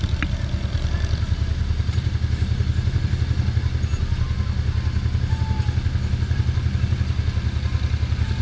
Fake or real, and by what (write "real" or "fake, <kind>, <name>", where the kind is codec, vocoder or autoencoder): real